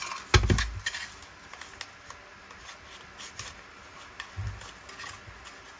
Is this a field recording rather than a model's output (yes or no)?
yes